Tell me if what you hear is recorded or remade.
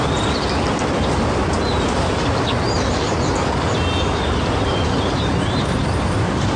recorded